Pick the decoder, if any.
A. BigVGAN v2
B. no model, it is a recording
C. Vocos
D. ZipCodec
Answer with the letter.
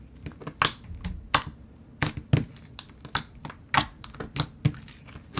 B